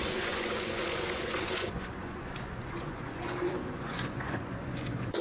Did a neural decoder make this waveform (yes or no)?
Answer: yes